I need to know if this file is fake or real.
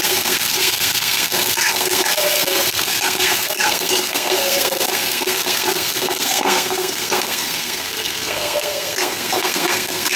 fake